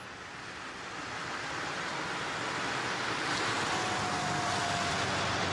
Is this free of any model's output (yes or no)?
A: yes